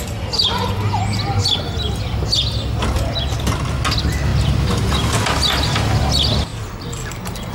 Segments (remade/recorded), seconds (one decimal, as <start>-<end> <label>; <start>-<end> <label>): 0.0-6.5 recorded; 6.5-7.5 remade